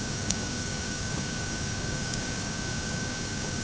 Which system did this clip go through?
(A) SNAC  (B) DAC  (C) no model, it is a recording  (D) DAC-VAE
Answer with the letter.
B